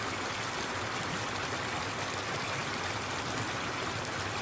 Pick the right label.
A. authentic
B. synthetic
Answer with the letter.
A